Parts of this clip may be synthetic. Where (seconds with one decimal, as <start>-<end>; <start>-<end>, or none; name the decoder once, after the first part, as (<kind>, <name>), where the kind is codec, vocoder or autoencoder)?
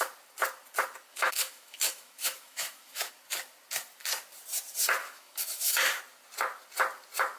1.1-3.1 (autoencoder, DAC-VAE); 5.0-6.0